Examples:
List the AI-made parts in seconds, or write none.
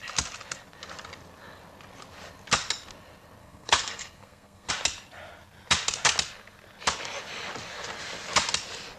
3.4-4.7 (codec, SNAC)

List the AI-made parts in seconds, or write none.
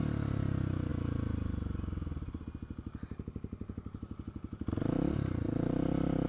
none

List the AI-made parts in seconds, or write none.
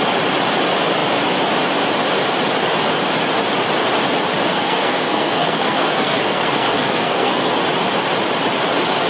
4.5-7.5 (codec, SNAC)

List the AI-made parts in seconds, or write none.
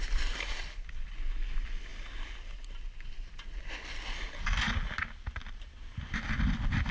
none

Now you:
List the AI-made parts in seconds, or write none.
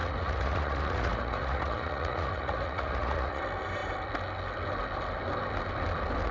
0.0-3.4 (vocoder, Vocos)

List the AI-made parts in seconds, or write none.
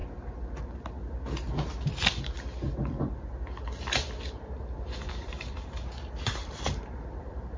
4.3-7.6 (vocoder, BigVGAN v2)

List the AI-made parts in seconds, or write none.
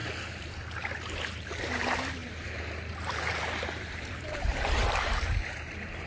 0.0-1.6 (vocoder, BigVGAN v2); 2.2-6.1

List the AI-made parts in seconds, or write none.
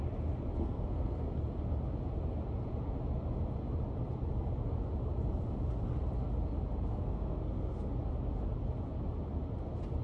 0.6-1.3 (codec, SNAC); 6.9-7.8